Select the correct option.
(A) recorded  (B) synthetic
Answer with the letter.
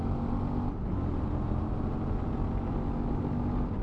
A